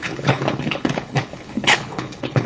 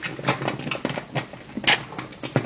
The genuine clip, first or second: second